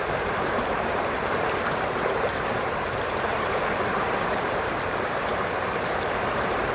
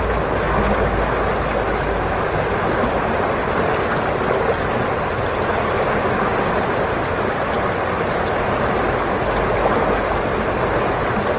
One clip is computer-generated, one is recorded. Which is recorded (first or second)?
second